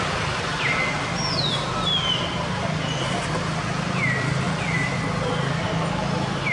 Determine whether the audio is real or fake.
real